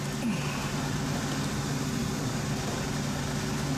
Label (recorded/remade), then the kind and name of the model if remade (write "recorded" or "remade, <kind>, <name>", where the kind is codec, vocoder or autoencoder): recorded